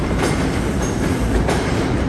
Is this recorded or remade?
remade